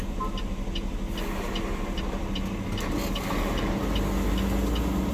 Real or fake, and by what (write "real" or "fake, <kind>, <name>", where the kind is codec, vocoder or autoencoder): real